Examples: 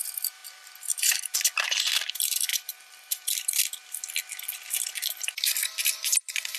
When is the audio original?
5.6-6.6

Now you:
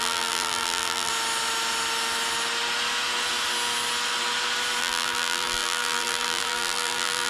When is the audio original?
1.1-4.8

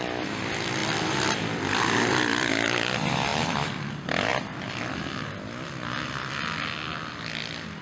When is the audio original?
0.0-0.8; 2.5-3.3; 3.9-4.3; 5.0-7.8